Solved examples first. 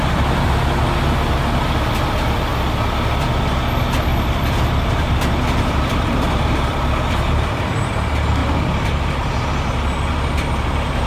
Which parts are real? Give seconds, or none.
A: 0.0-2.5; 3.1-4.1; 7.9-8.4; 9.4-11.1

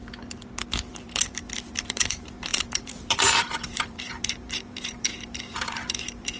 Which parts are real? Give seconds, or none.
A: 0.0-0.9

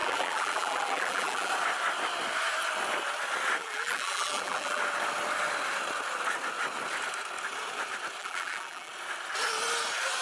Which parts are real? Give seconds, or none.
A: 1.5-3.6; 4.8-8.2; 8.9-10.2

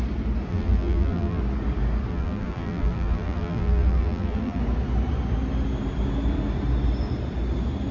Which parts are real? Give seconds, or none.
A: 0.0-0.5; 1.4-2.1; 4.6-7.9

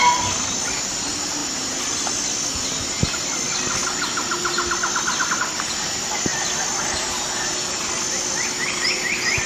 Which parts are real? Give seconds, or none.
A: 0.0-9.5

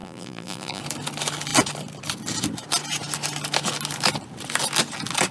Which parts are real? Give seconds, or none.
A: 0.8-5.3

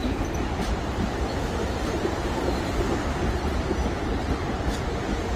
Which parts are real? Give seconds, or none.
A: 2.7-5.4